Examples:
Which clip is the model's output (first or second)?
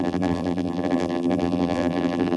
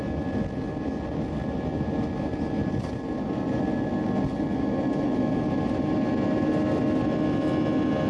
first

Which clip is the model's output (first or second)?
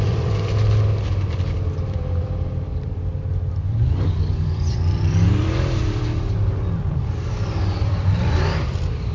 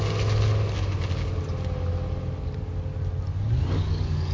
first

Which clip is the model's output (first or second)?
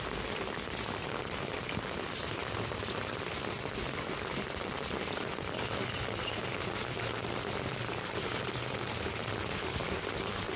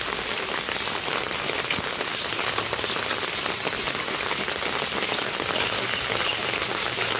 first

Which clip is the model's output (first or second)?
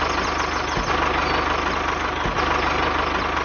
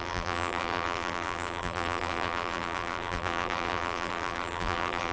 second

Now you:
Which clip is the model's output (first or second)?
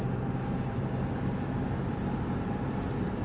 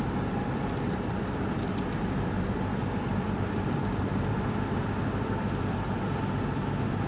second